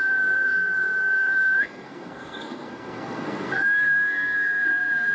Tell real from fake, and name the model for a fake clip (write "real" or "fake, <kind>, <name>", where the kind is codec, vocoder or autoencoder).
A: fake, codec, SNAC